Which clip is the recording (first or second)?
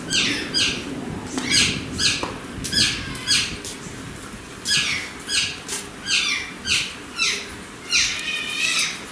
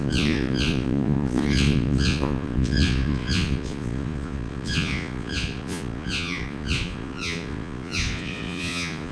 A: first